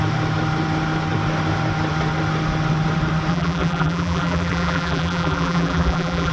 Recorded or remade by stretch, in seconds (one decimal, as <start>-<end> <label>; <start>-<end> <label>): 0.0-3.3 recorded; 3.3-6.3 remade